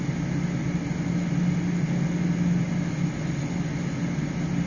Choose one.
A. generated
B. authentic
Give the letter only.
B